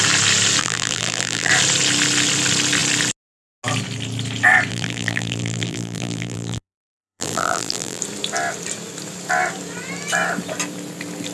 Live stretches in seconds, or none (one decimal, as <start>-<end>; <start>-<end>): 0.0-0.6; 1.5-4.7; 8.0-11.3